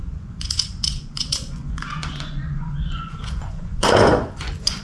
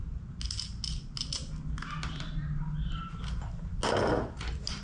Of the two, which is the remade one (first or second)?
first